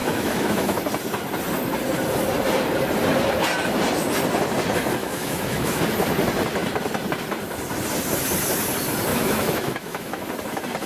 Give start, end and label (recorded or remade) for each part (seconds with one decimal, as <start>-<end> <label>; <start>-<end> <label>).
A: 0.0-0.8 remade; 0.8-5.0 recorded; 5.0-5.8 remade; 5.8-9.1 recorded; 9.1-10.2 remade; 10.2-10.9 recorded